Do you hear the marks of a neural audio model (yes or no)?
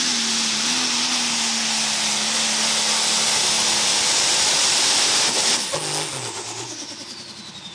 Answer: no